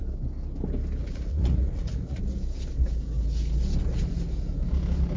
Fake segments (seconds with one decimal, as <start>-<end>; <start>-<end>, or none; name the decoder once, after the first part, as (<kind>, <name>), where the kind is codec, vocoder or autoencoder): 1.0-2.2 (vocoder, Vocos)